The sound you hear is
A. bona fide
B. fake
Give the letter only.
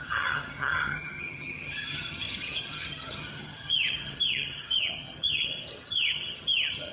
B